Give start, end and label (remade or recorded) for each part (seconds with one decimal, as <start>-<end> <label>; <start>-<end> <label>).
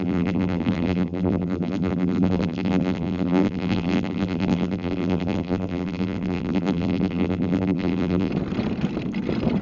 0.0-8.3 remade; 8.3-9.6 recorded